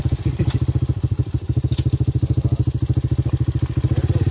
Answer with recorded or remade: recorded